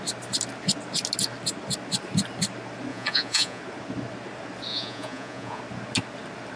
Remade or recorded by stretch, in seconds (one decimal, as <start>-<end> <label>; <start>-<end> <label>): 0.0-2.9 recorded; 2.9-3.6 remade; 3.6-4.7 recorded; 4.7-5.6 remade; 5.6-6.6 recorded